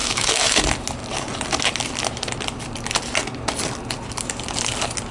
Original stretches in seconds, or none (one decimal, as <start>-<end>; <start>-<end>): 0.6-5.1

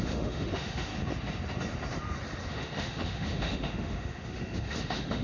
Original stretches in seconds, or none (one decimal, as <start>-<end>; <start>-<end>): 0.9-2.5

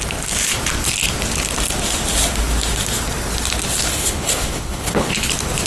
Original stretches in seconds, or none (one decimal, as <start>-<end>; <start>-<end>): 0.0-3.9; 5.3-5.7

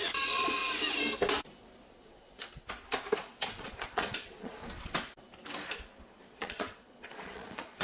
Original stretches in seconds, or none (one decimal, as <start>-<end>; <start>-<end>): 0.6-1.9; 2.4-3.2; 4.6-6.2

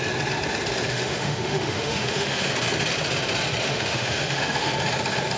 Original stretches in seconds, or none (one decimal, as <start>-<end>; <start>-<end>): 0.0-0.9; 2.5-3.6; 4.7-5.4

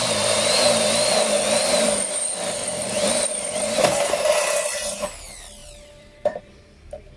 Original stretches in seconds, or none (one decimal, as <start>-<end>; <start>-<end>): 4.3-5.6; 6.4-7.2

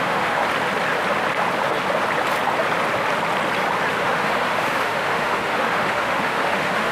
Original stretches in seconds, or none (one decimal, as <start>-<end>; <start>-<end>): 0.4-3.9

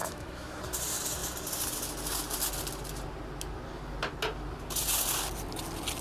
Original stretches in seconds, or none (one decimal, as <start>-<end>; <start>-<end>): 0.6-6.0